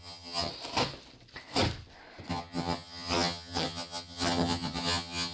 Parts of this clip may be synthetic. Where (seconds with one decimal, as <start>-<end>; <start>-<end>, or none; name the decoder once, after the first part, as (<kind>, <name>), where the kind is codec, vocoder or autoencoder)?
0.0-0.5 (vocoder, HiFi-GAN); 2.3-5.3